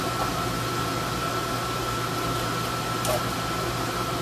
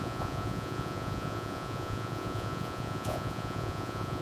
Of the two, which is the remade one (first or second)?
second